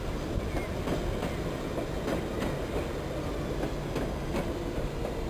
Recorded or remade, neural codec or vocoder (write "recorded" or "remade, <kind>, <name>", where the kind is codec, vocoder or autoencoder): recorded